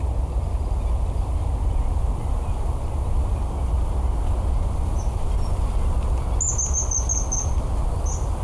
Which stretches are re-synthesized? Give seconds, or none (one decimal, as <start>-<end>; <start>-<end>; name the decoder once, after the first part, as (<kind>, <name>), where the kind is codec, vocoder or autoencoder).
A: none